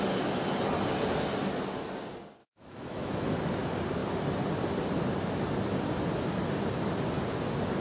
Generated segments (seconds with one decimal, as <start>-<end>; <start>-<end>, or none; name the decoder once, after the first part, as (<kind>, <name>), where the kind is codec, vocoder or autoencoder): 2.4-3.2 (autoencoder, DAC-VAE)